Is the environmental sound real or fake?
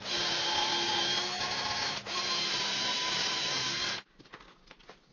real